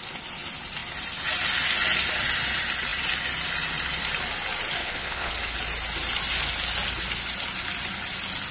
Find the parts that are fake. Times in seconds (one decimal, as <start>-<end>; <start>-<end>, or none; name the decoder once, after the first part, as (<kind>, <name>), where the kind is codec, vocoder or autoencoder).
4.8-5.3 (codec, HILCodec)